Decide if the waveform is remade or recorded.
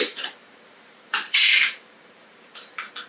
remade